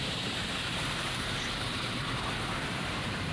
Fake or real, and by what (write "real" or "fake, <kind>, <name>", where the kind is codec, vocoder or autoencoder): fake, vocoder, BigVGAN v2